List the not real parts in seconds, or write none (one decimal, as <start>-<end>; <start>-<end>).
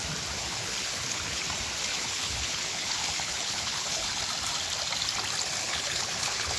0.4-1.4; 1.9-4.2; 5.6-6.6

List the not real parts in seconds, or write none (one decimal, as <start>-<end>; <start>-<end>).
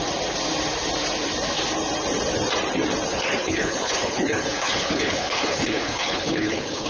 3.1-6.9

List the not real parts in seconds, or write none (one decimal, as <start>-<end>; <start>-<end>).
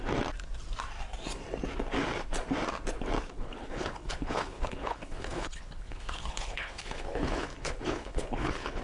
3.3-8.8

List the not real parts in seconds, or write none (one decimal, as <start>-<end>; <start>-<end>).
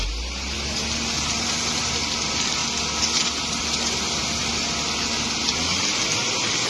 none